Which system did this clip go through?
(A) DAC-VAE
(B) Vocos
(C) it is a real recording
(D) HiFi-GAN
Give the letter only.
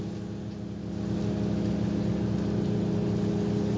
C